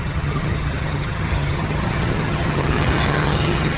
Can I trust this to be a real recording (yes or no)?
no